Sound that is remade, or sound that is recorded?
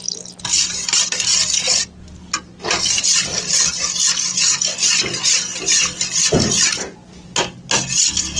recorded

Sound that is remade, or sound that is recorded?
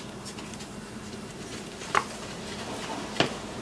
remade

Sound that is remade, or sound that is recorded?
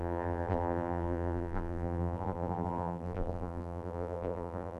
remade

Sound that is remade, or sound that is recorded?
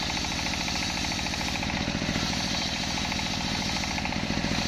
remade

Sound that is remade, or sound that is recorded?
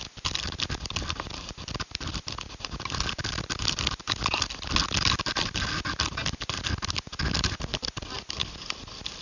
recorded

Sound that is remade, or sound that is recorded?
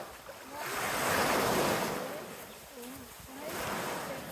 recorded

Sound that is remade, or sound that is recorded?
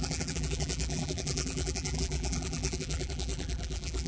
remade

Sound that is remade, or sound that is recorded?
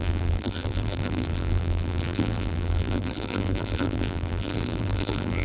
remade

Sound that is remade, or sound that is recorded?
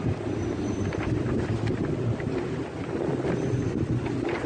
remade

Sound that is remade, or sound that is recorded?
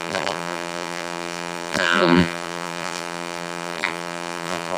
remade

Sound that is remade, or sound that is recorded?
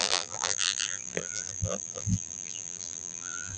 remade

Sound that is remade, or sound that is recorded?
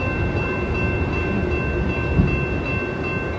recorded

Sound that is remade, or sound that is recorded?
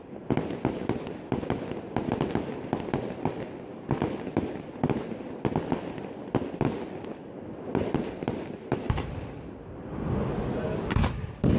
recorded